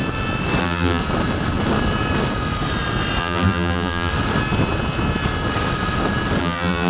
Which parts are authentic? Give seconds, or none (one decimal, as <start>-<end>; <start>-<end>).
0.0-0.6; 1.0-3.2; 4.1-6.4